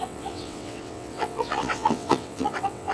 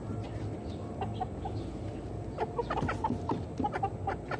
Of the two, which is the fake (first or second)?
first